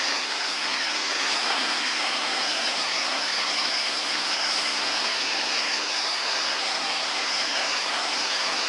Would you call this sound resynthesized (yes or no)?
yes